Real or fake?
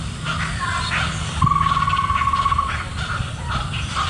real